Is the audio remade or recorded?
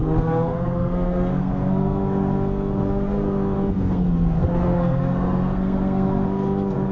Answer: remade